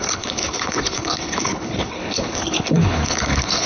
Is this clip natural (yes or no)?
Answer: no